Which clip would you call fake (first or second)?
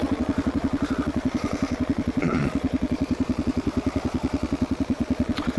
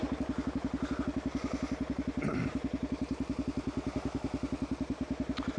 first